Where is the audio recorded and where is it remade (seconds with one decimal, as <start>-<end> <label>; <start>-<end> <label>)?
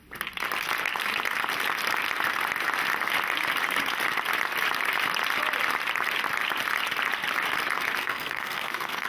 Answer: 0.0-8.0 recorded; 8.0-9.1 remade